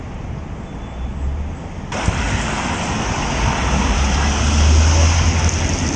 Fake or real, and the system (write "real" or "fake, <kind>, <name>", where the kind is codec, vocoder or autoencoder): real